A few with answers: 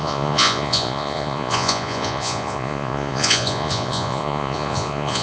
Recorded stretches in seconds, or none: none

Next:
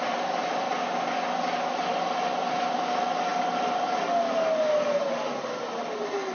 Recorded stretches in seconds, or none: 0.0-6.3

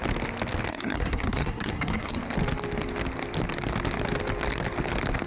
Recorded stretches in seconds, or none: 0.0-0.7; 2.2-5.3

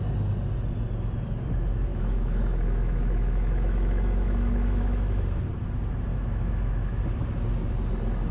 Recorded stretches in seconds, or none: 0.0-1.9; 5.2-6.1; 7.0-8.3

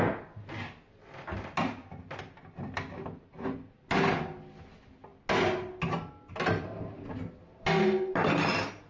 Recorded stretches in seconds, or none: 0.0-8.9